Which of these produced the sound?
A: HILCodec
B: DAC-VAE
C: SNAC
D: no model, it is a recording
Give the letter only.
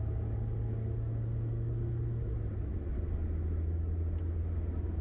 D